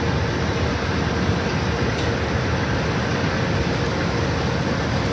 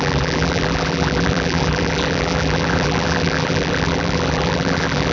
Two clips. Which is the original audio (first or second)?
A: first